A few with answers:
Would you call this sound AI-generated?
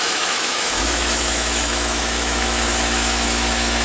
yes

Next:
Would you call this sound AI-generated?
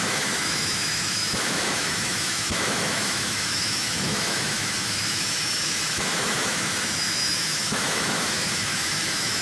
yes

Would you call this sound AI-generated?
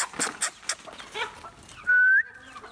no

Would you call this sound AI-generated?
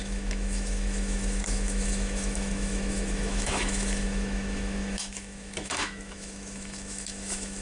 yes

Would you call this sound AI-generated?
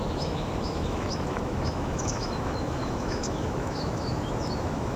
yes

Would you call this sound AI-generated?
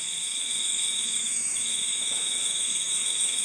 yes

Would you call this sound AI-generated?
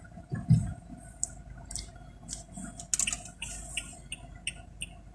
no